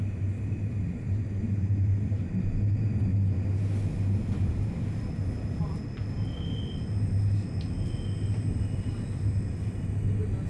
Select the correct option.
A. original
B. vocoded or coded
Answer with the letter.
A